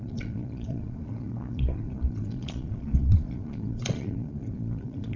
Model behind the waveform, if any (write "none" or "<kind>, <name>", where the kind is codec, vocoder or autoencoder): vocoder, Vocos